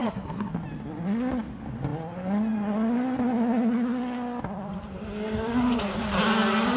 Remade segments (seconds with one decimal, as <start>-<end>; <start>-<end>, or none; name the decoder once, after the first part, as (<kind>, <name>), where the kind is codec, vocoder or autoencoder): 0.0-0.5 (codec, SNAC)